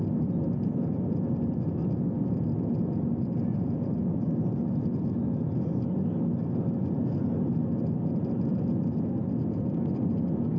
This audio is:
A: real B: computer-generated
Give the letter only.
A